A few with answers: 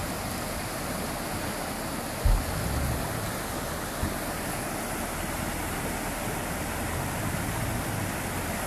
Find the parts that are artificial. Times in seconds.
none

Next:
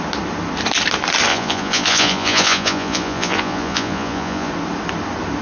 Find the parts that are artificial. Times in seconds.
1.3-4.5 (vocoder, Vocos)

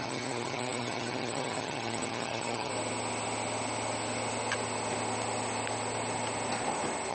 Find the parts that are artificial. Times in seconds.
0.0-2.7 (vocoder, HiFi-GAN)

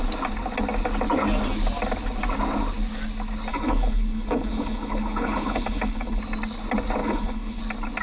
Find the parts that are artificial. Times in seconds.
3.5-6.2 (codec, HILCodec); 7.0-7.6

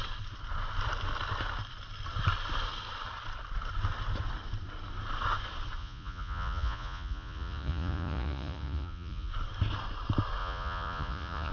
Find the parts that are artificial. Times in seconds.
5.8-9.3 (vocoder, Vocos); 10.4-11.5